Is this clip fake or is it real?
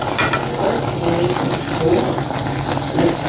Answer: real